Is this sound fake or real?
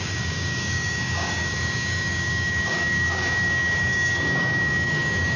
fake